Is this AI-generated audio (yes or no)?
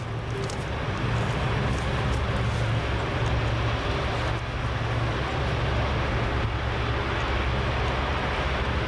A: no